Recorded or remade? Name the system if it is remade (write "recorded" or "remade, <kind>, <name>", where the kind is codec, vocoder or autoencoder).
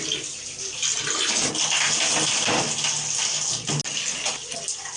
recorded